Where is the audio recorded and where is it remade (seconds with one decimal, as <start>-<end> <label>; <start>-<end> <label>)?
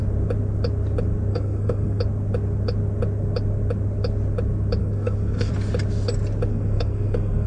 0.0-1.3 recorded; 1.3-2.0 remade; 2.0-4.8 recorded; 4.8-5.5 remade; 5.5-6.5 recorded; 6.5-7.5 remade